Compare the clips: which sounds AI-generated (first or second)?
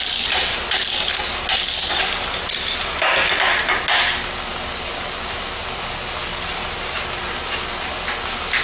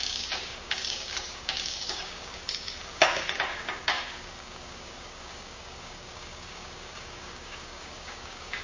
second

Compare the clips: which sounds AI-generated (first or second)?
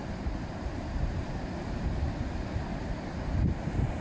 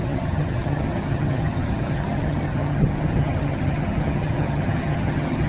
second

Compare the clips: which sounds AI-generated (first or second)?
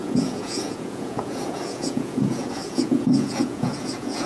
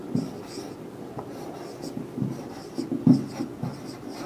first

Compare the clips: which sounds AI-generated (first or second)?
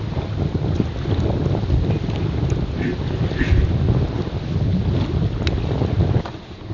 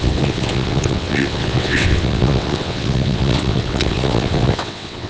second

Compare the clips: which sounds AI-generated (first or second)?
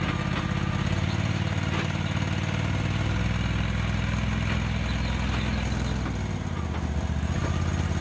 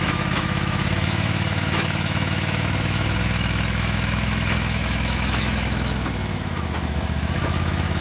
second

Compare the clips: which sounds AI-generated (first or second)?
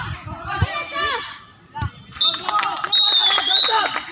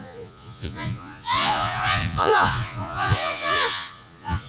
second